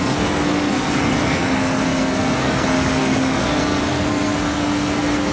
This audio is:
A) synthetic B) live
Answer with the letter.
A